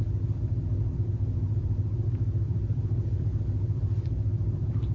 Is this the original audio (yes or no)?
no